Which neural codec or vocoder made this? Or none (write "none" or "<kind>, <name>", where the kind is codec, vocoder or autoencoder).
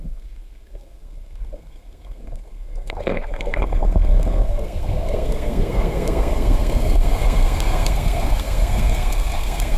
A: codec, SNAC